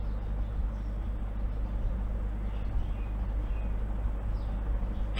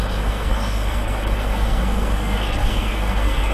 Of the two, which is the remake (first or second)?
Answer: second